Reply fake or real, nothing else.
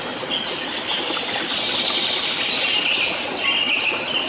real